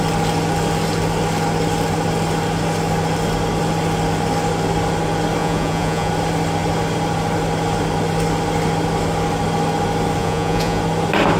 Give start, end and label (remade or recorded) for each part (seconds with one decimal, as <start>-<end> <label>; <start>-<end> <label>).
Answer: 0.0-5.4 recorded; 5.4-6.1 remade; 6.1-10.2 recorded; 10.2-10.8 remade; 10.8-11.4 recorded